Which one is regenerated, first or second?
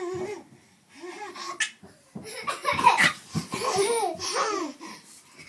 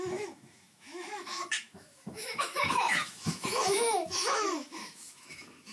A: second